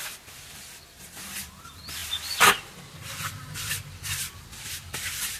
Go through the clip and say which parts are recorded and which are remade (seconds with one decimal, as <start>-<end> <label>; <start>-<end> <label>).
0.0-2.0 recorded; 2.0-5.4 remade